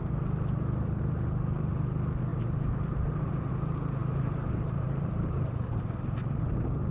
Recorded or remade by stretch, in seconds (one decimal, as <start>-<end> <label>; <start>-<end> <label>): 0.0-2.3 recorded; 2.3-3.5 remade; 3.5-4.0 recorded; 4.0-5.8 remade; 5.8-6.9 recorded